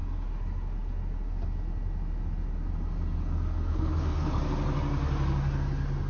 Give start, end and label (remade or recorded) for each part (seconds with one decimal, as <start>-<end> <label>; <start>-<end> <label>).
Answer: 0.0-3.7 recorded; 3.7-4.4 remade; 4.4-6.1 recorded